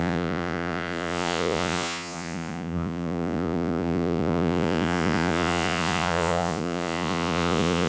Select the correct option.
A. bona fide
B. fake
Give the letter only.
B